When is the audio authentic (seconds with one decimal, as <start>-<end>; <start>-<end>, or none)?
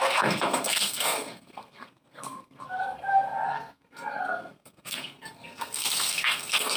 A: none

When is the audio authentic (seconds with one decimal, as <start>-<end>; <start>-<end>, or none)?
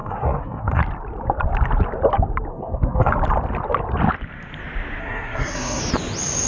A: 0.8-2.5; 3.1-5.0; 5.8-6.5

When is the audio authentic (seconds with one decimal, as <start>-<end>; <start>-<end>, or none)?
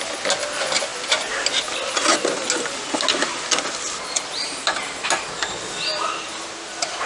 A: 0.0-7.1